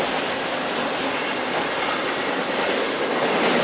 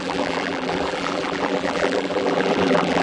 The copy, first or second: second